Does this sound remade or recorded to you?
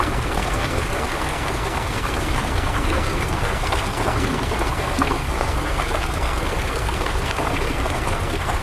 remade